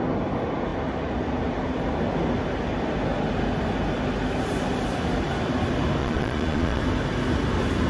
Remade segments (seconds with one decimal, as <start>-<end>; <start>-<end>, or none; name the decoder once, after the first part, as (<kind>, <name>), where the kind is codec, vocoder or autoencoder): 6.0-6.8 (vocoder, Vocos)